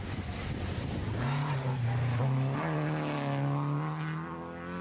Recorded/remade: recorded